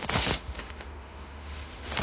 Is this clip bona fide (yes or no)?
no